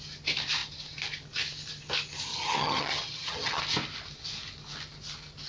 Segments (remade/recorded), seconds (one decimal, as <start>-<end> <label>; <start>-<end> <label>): 0.0-2.3 recorded; 2.3-3.6 remade; 3.6-5.5 recorded